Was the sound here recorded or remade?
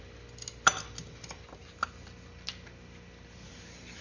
recorded